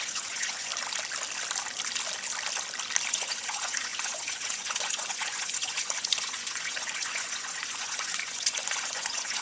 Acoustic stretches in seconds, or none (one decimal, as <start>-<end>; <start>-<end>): 0.7-3.1